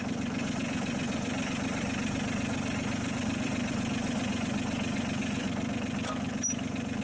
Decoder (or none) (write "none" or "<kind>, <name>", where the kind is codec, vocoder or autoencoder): vocoder, BigVGAN v2